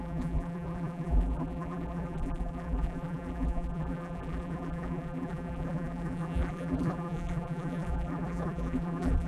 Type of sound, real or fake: fake